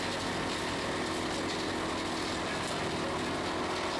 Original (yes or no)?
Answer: yes